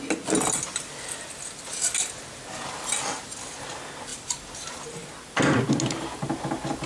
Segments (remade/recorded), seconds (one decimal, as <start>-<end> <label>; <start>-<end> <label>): 0.0-6.9 recorded